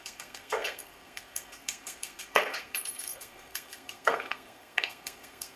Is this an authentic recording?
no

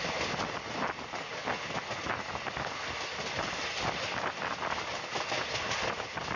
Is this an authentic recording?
yes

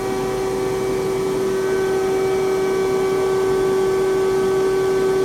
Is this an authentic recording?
yes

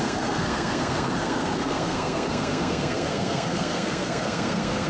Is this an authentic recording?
no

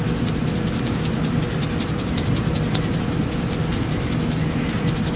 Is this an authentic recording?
yes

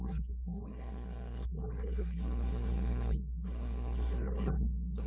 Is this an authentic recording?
no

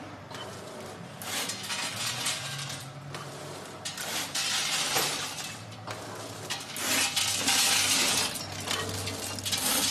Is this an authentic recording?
yes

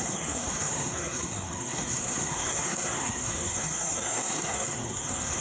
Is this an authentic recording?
no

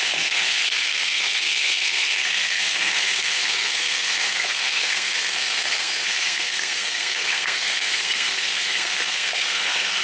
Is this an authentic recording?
no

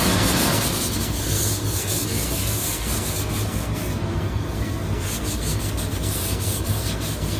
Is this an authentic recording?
no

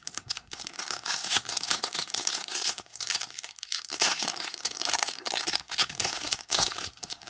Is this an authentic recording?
no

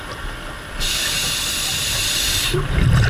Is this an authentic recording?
yes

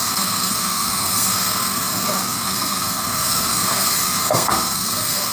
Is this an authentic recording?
no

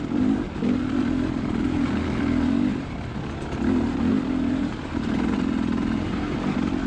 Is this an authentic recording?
yes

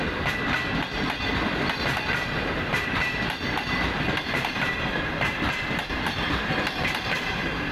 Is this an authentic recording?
yes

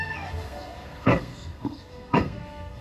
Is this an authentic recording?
no